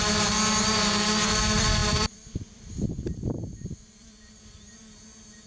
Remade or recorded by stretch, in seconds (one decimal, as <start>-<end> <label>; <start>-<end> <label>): 0.0-1.8 recorded; 1.8-4.3 remade; 4.3-5.5 recorded